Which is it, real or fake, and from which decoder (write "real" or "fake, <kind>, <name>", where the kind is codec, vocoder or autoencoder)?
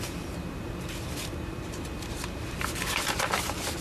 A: fake, vocoder, BigVGAN v2